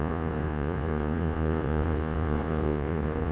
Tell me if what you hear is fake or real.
fake